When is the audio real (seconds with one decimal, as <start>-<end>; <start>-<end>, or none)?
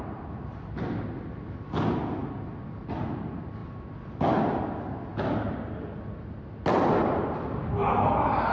0.0-8.5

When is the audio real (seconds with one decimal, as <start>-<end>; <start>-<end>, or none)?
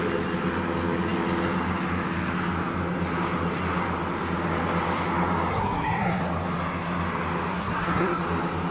0.0-5.5; 6.2-7.5; 8.2-8.7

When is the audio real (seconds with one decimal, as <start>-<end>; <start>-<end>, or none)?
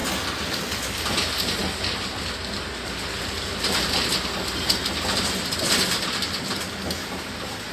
0.0-7.0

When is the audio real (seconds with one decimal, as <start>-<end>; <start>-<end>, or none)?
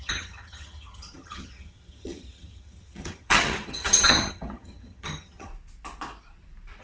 5.5-6.8